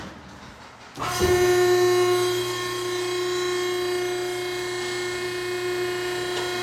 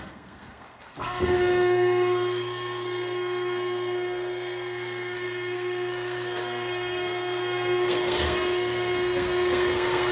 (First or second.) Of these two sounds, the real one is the first